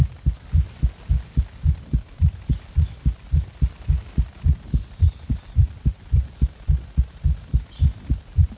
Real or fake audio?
real